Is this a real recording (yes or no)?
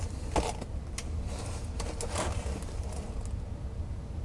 yes